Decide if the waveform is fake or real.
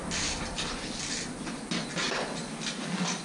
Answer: real